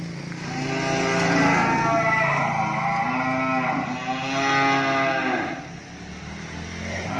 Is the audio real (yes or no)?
yes